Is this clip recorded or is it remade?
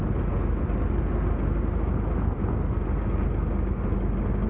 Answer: recorded